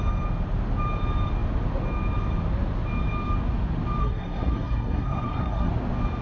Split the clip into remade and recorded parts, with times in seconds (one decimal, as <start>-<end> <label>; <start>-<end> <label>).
0.0-4.0 recorded; 4.0-5.7 remade; 5.7-6.2 recorded